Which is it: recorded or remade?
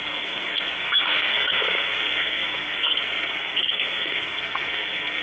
remade